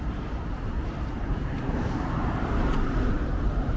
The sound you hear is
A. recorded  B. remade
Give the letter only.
B